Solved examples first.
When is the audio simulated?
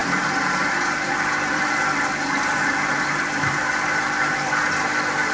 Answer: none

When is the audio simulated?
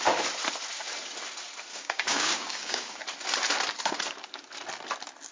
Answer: 1.7-3.0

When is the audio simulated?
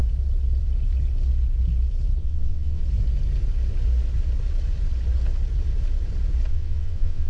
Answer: 2.2-2.8; 6.5-7.3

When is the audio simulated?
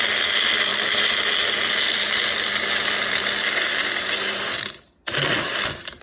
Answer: none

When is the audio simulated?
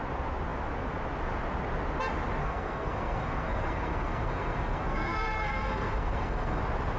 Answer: 2.4-6.6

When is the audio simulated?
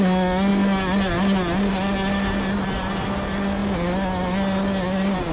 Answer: none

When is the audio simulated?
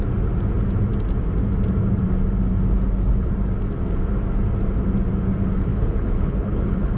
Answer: 5.7-7.0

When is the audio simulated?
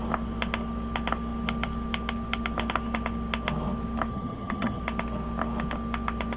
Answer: 4.1-4.8